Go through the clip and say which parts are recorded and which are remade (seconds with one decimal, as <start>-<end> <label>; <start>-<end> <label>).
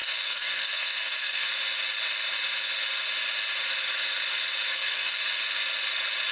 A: 0.0-1.5 remade; 1.5-4.7 recorded; 4.7-5.2 remade; 5.2-6.3 recorded